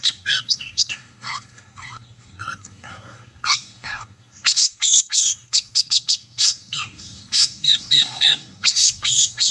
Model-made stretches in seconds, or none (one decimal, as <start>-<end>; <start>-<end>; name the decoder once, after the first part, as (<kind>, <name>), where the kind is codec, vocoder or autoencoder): 0.0-9.5 (codec, SNAC)